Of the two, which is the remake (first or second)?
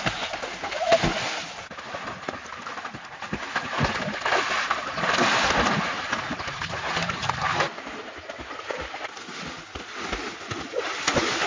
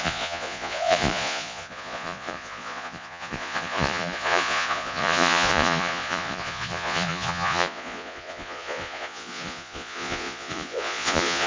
second